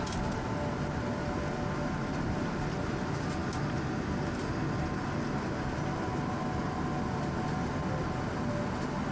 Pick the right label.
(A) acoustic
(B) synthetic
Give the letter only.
A